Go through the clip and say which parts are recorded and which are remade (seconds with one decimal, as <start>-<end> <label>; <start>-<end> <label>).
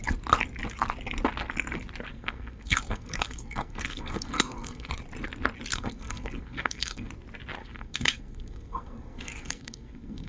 0.0-2.1 recorded; 2.1-4.9 remade; 4.9-5.7 recorded; 5.7-7.1 remade; 7.1-7.6 recorded; 7.6-10.3 remade